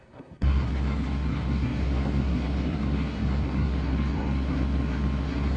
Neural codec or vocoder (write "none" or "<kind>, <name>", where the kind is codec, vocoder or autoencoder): codec, SNAC